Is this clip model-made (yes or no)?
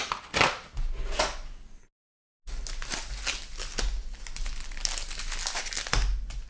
no